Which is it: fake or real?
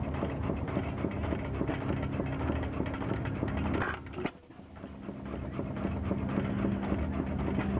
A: real